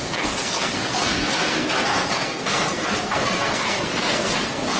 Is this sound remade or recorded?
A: remade